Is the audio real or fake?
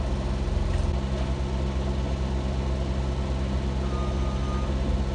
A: real